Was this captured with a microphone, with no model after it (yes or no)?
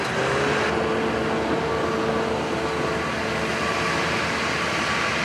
yes